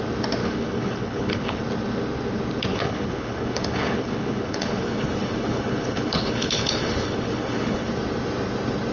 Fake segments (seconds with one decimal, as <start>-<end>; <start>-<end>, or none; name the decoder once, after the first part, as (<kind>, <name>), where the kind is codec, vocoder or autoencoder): 0.4-1.6 (codec, HILCodec); 2.7-7.9